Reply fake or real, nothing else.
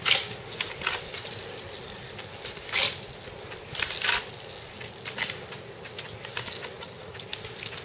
real